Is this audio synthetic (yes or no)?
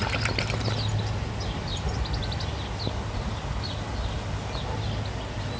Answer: no